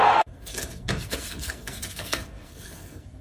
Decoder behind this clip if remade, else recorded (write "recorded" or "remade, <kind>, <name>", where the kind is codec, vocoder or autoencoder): remade, codec, SNAC